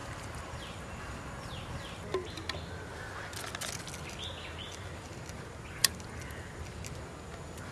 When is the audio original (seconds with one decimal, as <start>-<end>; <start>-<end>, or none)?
0.0-7.7